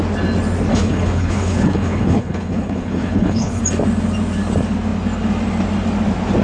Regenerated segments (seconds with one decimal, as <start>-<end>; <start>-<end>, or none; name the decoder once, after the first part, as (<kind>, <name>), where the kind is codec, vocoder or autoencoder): 0.7-3.6 (codec, HILCodec)